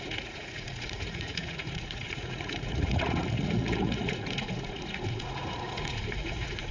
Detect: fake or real fake